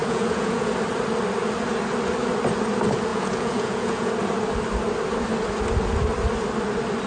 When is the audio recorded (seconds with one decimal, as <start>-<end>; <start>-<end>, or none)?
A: 0.7-3.1; 4.1-7.1